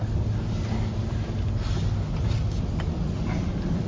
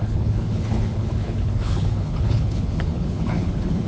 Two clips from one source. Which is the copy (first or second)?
second